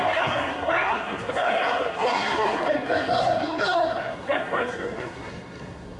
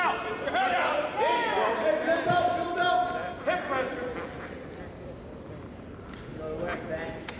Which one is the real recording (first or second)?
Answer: second